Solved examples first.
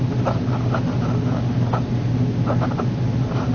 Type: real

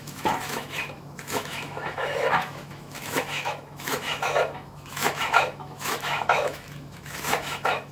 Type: fake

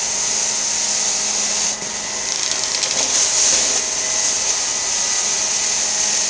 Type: real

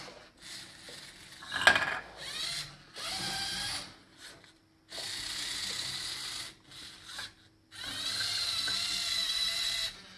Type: real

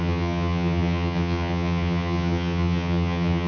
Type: fake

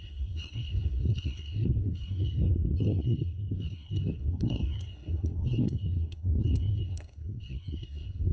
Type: fake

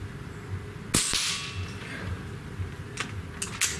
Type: real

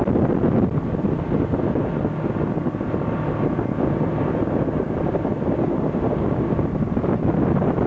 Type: real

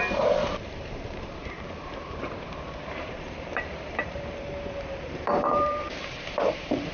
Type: fake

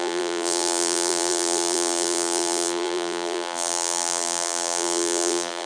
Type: fake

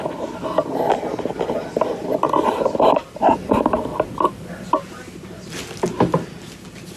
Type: real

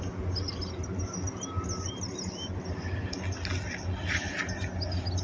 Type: real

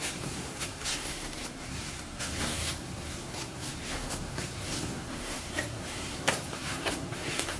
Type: fake